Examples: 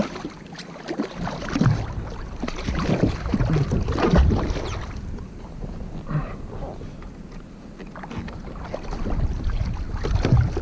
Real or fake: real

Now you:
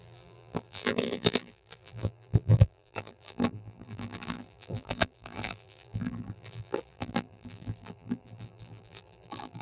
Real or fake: fake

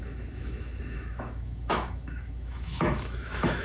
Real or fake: fake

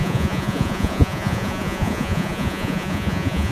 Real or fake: fake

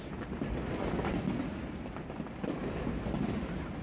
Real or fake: real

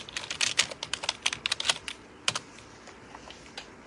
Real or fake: real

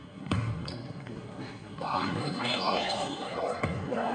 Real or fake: fake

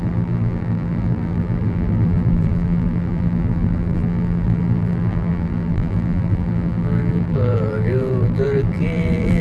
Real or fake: fake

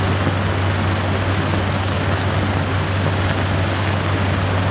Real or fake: real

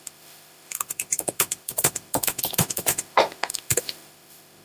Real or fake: fake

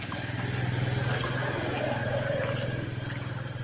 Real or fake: real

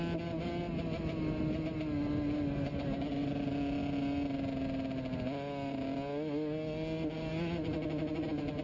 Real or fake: real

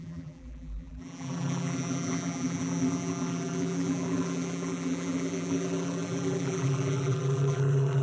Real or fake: fake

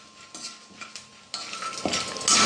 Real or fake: real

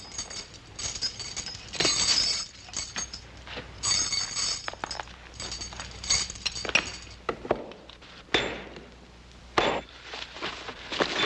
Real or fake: real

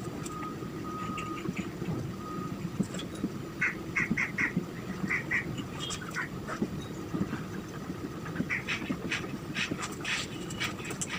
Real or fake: real